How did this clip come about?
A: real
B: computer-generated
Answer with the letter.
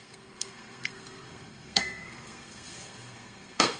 B